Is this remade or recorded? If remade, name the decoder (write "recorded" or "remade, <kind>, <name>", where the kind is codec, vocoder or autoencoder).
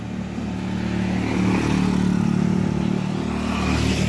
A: recorded